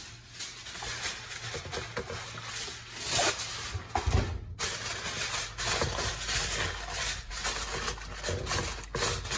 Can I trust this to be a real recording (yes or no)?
yes